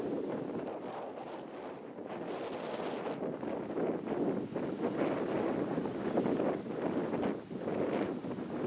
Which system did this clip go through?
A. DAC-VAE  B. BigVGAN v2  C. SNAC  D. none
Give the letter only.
D